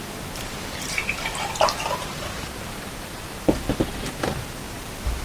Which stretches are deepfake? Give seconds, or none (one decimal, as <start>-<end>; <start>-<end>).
0.0-5.2